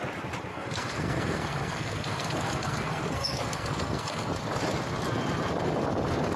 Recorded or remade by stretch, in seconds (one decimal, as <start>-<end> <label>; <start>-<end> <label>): 0.0-0.5 recorded; 0.5-4.3 remade; 4.3-6.4 recorded